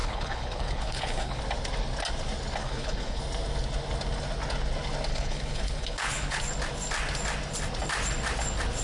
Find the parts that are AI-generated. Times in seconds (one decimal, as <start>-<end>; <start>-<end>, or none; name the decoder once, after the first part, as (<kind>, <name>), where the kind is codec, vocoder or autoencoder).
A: 0.0-1.4 (codec, HILCodec); 2.6-3.2; 5.1-6.4